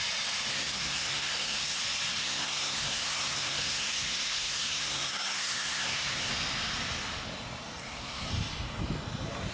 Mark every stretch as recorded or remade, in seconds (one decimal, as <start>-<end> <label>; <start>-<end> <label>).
0.0-0.5 recorded; 0.5-1.8 remade; 1.8-2.2 recorded; 2.2-6.3 remade; 6.3-7.8 recorded; 7.8-8.3 remade; 8.3-9.5 recorded